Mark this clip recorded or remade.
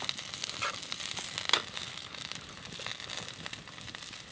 recorded